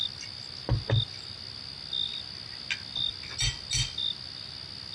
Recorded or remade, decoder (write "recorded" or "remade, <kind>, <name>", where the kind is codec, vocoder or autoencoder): recorded